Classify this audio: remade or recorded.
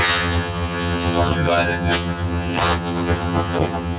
remade